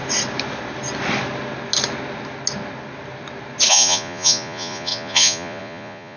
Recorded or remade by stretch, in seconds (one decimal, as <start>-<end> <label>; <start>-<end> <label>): 0.0-3.7 recorded; 3.7-6.2 remade